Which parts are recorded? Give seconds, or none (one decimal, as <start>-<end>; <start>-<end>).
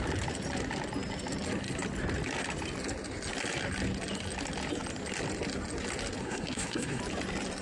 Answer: 0.0-6.2; 7.0-7.6